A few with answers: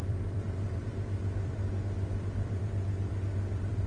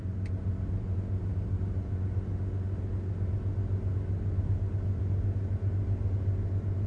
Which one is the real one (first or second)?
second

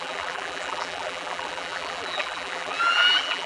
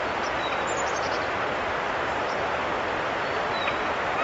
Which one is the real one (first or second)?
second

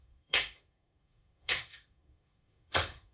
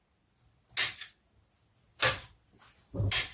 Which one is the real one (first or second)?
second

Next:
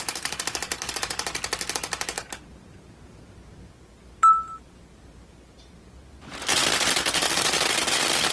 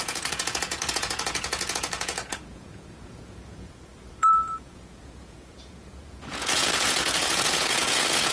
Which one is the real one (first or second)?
first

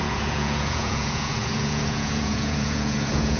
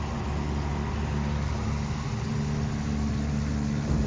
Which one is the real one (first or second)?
second